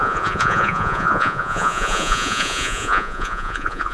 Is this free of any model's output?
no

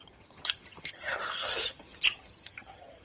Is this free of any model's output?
no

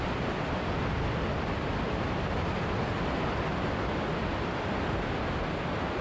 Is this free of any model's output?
yes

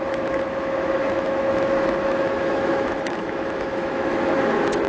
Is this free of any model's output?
no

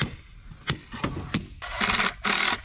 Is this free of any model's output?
yes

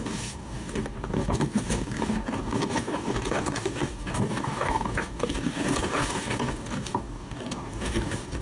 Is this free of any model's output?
no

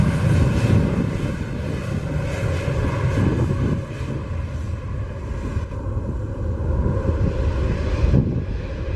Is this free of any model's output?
yes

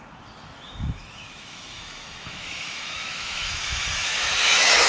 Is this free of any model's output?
no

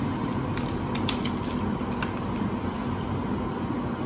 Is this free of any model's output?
yes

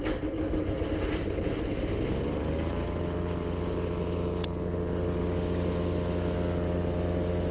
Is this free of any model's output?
yes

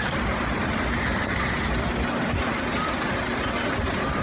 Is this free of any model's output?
no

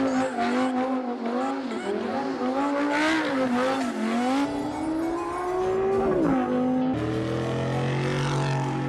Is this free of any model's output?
yes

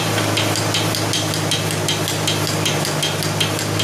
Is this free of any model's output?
yes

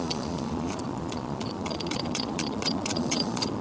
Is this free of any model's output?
no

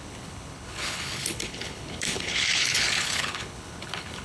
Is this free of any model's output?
no